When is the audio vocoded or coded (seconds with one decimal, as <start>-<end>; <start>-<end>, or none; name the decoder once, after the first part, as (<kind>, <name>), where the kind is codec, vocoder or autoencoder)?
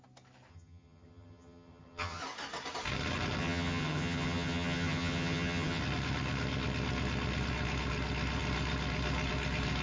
0.5-2.2 (vocoder, HiFi-GAN); 3.4-5.8